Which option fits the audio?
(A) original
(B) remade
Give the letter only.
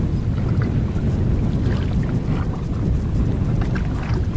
A